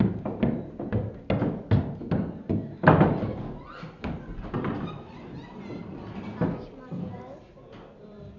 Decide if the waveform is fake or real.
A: real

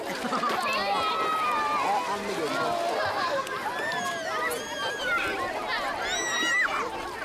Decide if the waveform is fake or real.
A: real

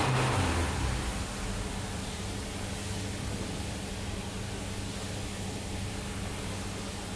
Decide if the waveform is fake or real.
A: real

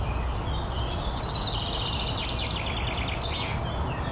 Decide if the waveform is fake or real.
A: real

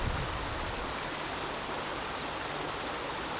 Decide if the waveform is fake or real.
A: real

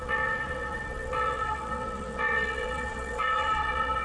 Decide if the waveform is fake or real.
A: fake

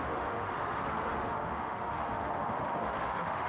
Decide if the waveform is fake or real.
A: fake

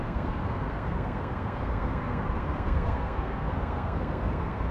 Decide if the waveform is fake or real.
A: fake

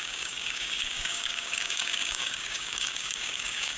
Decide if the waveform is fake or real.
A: fake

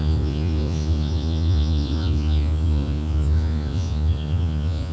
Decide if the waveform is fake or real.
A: fake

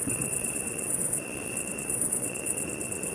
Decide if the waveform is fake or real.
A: fake